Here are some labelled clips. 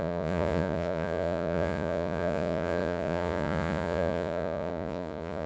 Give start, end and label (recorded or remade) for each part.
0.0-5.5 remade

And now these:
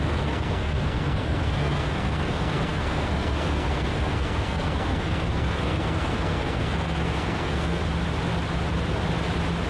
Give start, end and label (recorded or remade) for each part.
0.0-7.8 remade; 7.8-9.7 recorded

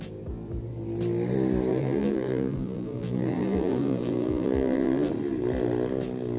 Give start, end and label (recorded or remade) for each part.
0.0-1.7 recorded; 1.7-5.1 remade; 5.1-6.4 recorded

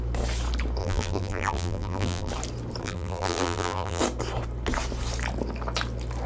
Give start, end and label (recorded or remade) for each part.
0.0-0.8 recorded; 0.8-2.3 remade; 2.3-2.8 recorded; 2.8-4.0 remade; 4.0-6.3 recorded